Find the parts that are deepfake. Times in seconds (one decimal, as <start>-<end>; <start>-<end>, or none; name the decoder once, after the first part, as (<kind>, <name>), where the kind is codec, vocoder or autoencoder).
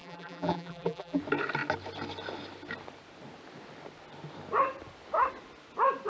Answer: 0.0-1.2 (vocoder, BigVGAN v2)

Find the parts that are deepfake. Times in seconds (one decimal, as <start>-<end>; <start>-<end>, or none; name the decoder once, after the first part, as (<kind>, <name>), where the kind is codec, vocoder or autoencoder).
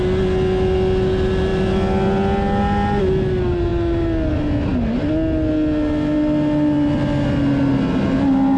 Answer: none